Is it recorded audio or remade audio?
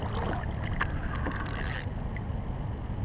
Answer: recorded